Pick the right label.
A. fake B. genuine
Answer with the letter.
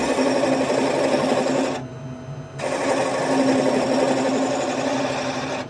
B